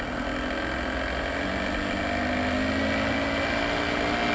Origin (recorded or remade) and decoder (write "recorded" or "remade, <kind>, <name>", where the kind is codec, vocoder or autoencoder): recorded